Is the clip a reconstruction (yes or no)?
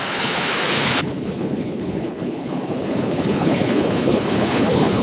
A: yes